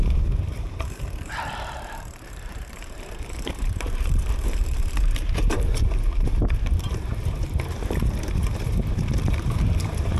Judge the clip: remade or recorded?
remade